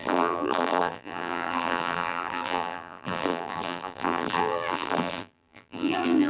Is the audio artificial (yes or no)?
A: yes